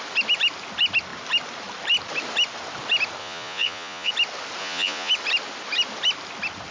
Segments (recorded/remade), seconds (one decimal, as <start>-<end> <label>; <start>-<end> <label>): 0.0-3.2 recorded; 3.2-4.1 remade; 4.1-4.6 recorded; 4.6-5.1 remade; 5.1-6.7 recorded